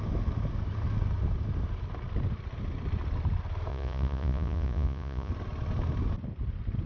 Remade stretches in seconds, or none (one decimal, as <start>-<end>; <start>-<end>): 3.7-5.3